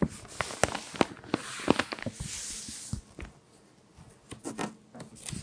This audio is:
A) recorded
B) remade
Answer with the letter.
A